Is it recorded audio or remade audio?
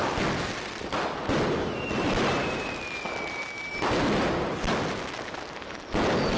recorded